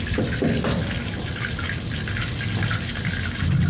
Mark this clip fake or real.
real